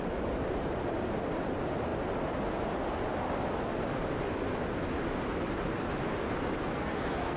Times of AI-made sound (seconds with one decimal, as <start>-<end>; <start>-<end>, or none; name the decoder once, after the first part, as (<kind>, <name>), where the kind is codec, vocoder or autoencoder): 6.7-7.4 (codec, SNAC)